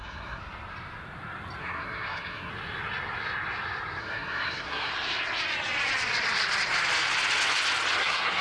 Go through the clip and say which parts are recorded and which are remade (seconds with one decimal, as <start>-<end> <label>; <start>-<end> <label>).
0.0-0.4 remade; 0.4-1.6 recorded; 1.6-2.5 remade; 2.5-4.0 recorded; 4.0-4.9 remade; 4.9-8.0 recorded; 8.0-8.4 remade